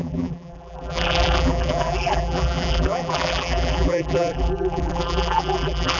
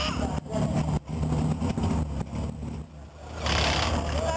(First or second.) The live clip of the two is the second